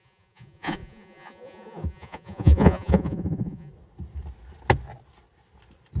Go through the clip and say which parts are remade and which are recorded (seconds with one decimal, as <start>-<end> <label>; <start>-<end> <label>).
0.0-3.7 remade; 3.7-6.0 recorded